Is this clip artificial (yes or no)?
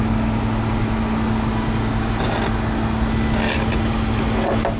no